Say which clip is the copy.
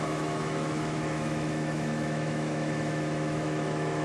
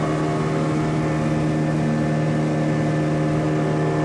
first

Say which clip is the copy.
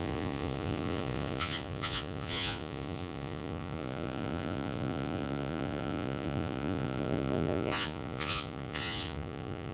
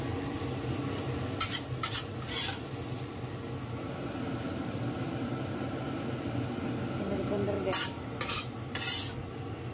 first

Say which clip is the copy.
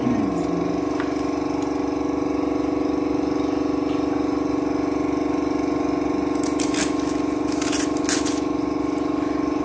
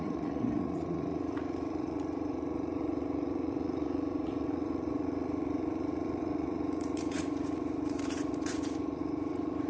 second